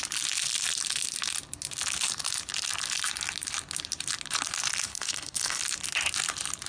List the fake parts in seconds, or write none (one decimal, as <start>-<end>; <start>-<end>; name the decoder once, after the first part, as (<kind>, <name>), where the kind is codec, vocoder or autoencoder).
4.9-5.6 (codec, HILCodec)

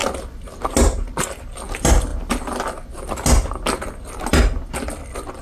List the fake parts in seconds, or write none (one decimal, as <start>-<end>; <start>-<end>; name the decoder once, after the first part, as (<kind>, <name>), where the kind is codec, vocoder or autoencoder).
0.8-2.1 (vocoder, BigVGAN v2); 4.3-5.4